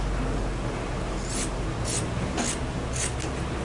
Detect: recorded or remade recorded